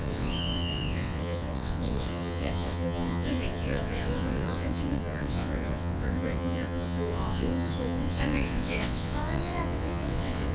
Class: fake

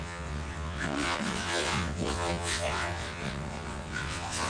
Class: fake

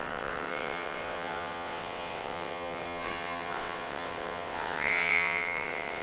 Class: fake